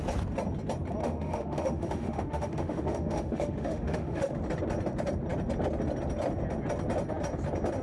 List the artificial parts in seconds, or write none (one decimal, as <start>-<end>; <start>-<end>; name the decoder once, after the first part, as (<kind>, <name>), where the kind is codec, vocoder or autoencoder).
1.0-4.4 (autoencoder, DAC-VAE)